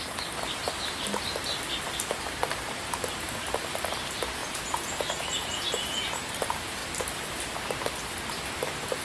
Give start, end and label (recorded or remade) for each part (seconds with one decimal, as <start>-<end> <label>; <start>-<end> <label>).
0.0-4.4 recorded; 4.4-6.3 remade; 6.3-9.0 recorded